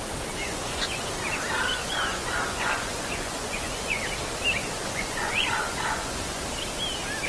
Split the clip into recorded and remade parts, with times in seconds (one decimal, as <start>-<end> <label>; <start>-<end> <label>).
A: 0.0-0.4 recorded; 0.4-1.1 remade; 1.1-1.7 recorded; 1.7-4.0 remade; 4.0-4.6 recorded; 4.6-6.4 remade; 6.4-7.3 recorded